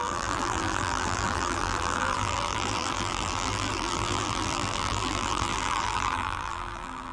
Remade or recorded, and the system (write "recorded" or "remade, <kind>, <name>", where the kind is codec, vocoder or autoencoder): remade, vocoder, BigVGAN v2